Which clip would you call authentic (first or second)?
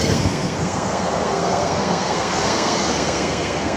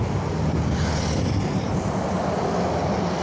second